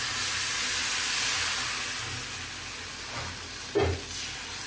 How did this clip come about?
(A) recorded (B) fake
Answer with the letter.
A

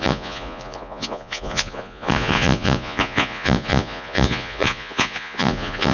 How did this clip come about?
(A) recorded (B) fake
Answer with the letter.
B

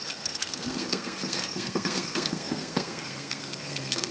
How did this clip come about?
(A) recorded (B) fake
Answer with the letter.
B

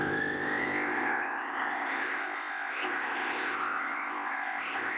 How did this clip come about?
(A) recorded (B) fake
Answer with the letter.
B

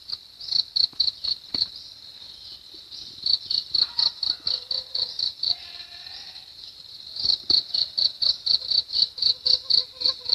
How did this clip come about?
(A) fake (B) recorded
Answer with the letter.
A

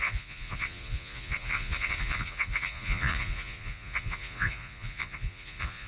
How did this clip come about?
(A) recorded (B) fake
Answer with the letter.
B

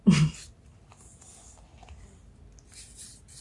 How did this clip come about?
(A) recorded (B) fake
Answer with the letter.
A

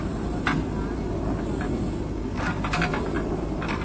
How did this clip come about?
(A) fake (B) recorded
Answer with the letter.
B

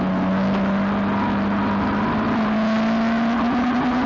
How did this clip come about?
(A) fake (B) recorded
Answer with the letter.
B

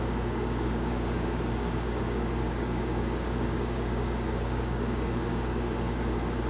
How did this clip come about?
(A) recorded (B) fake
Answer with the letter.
B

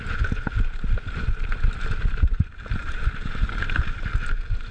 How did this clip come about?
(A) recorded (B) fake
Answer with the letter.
A